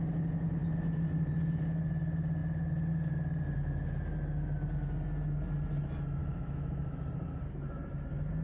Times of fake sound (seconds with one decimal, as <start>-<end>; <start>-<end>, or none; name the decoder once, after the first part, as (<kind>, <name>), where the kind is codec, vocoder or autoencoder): 6.2-7.1 (autoencoder, DAC-VAE)